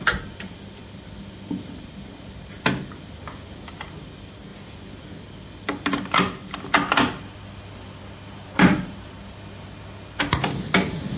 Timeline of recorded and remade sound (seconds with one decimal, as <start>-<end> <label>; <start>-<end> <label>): 0.0-11.2 recorded